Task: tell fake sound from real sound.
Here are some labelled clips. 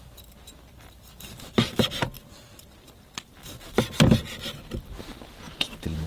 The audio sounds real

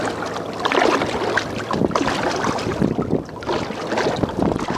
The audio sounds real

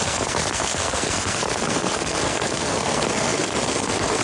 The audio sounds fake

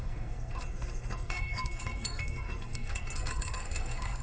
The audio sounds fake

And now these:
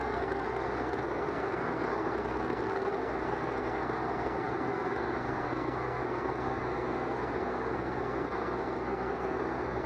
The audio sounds fake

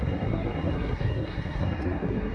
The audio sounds fake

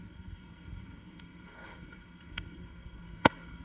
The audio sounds fake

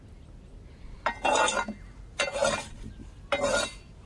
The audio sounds real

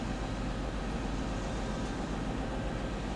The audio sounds real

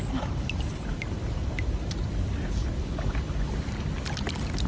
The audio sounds real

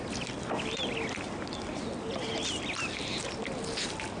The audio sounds real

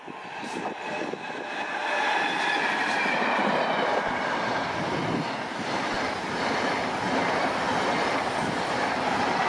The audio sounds real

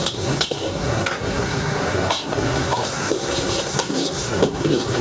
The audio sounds fake